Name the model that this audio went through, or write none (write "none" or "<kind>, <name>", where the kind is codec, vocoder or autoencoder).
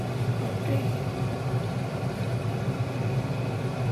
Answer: none